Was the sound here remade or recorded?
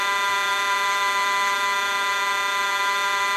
remade